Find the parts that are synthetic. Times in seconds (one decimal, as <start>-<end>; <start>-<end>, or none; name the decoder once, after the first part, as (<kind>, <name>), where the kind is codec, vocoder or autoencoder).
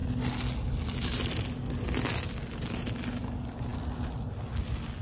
none